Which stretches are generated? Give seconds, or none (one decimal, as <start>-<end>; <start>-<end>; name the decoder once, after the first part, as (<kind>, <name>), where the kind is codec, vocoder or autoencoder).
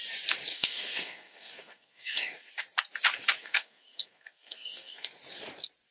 0.5-2.5 (codec, SNAC); 3.4-5.1